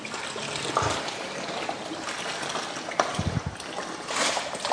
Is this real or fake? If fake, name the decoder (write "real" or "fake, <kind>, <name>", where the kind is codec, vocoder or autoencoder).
real